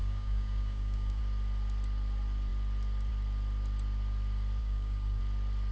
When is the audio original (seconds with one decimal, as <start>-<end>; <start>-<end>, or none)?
1.2-4.6; 5.2-5.7